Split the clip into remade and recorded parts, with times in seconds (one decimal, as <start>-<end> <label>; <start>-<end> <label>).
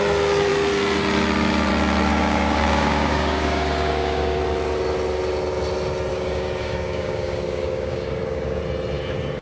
0.0-2.1 recorded; 2.1-4.4 remade; 4.4-6.1 recorded; 6.1-8.6 remade; 8.6-9.4 recorded